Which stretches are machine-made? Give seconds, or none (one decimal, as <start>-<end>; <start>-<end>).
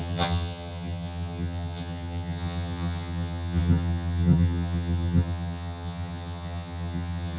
0.0-7.4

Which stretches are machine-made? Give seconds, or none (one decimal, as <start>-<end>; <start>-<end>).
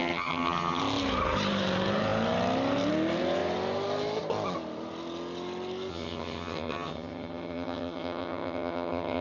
0.0-0.8; 5.9-9.2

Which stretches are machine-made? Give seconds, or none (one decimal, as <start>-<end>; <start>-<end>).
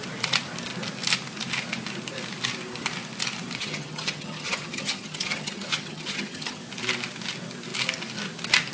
3.6-6.6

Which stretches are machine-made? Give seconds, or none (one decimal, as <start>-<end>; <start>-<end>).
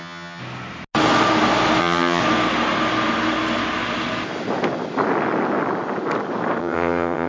0.0-0.4; 1.8-2.2; 6.6-7.3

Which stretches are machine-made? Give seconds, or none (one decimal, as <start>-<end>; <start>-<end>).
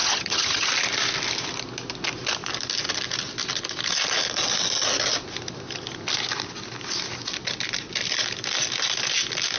0.0-0.7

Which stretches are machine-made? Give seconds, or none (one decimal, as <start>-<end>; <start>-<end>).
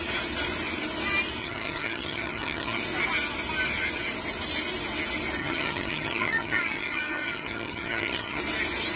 1.4-2.8; 5.4-8.4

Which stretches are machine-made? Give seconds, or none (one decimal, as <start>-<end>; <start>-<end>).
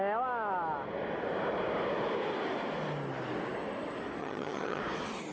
4.2-4.8